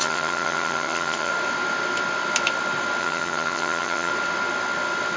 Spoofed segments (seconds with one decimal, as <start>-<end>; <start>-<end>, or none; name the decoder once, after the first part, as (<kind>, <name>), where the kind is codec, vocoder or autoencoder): 0.0-1.3 (vocoder, HiFi-GAN); 3.0-4.1